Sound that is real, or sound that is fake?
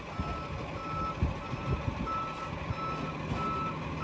real